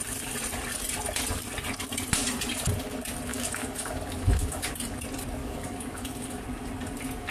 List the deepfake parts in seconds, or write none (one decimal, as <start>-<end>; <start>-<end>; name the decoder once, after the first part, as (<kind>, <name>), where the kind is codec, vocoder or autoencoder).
3.3-4.7 (codec, DAC); 5.4-6.4